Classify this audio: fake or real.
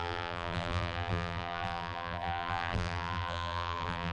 fake